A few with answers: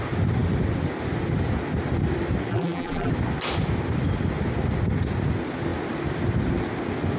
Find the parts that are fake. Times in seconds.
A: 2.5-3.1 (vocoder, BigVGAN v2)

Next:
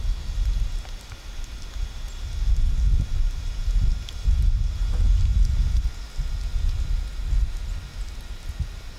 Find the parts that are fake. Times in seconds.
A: none

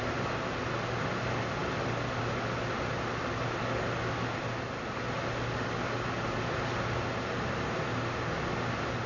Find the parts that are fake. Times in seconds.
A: none

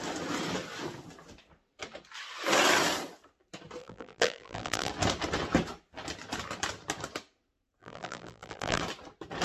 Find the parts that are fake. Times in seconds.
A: 3.8-4.9 (vocoder, BigVGAN v2); 7.8-8.8

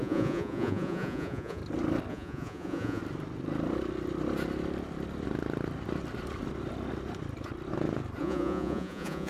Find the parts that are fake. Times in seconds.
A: 0.0-1.6 (vocoder, Vocos); 2.1-3.0; 8.2-9.3

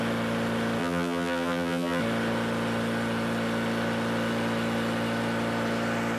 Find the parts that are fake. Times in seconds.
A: 0.8-2.0 (vocoder, BigVGAN v2)

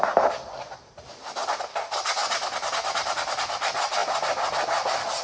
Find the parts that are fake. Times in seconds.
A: none

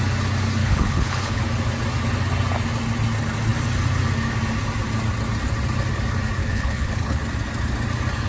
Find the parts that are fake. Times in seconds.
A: 0.6-1.4 (codec, HILCodec); 6.4-7.2